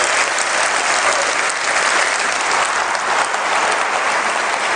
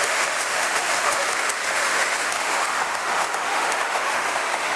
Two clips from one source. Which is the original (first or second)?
first